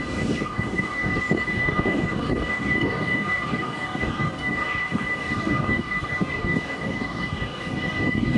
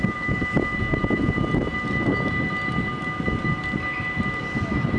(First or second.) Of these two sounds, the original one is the second